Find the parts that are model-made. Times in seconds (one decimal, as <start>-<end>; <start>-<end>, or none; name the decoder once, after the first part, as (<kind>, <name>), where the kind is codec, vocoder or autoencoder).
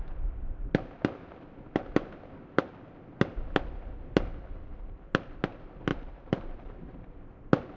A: 4.3-5.1 (vocoder, BigVGAN v2); 5.9-7.2